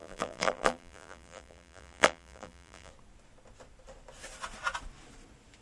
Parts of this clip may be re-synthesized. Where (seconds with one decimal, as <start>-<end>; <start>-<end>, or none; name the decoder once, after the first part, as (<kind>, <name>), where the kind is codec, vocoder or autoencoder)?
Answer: 0.0-2.9 (vocoder, BigVGAN v2)